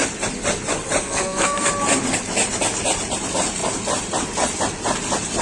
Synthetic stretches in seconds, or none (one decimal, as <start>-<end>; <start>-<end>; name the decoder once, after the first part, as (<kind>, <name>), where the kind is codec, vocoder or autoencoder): 1.0-1.7 (codec, SNAC)